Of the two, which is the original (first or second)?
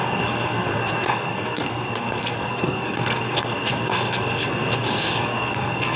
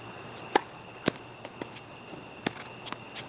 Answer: second